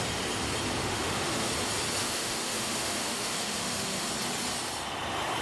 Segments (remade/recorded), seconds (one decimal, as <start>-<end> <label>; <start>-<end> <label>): 0.0-0.8 recorded; 0.8-1.5 remade; 1.5-2.0 recorded; 2.0-4.1 remade; 4.1-5.4 recorded